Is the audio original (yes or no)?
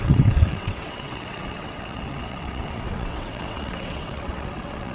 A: no